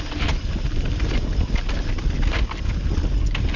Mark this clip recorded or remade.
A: recorded